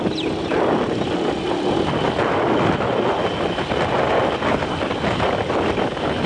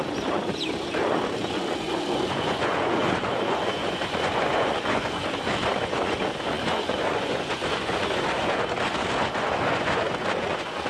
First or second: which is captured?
first